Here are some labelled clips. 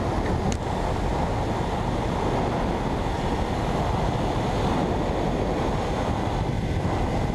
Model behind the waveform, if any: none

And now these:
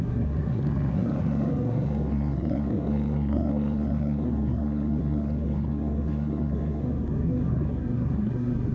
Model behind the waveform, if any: codec, SNAC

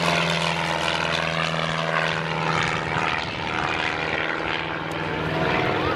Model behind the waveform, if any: none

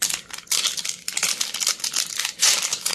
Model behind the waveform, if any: none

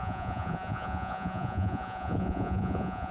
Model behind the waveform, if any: vocoder, Vocos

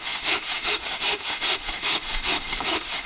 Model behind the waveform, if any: autoencoder, DAC-VAE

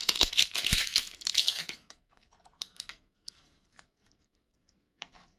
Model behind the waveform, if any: codec, SNAC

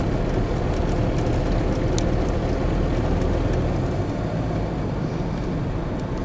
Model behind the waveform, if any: none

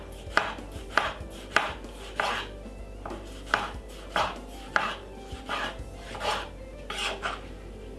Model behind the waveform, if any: vocoder, BigVGAN v2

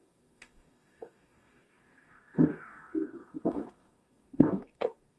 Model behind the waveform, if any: codec, DAC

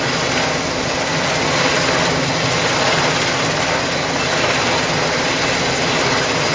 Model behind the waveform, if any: none